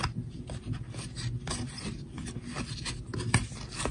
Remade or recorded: recorded